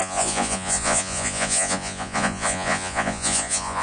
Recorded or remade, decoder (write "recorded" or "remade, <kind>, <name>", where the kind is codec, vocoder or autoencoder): remade, vocoder, Vocos